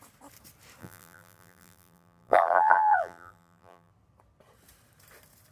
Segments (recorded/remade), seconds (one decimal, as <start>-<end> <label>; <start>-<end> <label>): 0.0-0.8 recorded; 0.8-3.9 remade; 3.9-5.5 recorded